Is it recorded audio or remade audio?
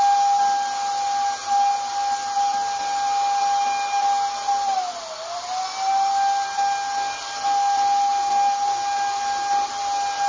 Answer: recorded